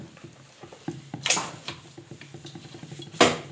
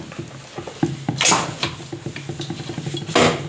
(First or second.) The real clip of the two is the second